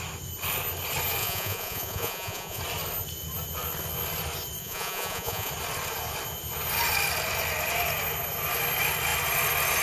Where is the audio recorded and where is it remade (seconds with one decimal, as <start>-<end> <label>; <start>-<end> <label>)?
0.0-1.2 recorded; 1.2-2.6 remade; 2.6-4.6 recorded; 4.6-5.5 remade; 5.5-9.8 recorded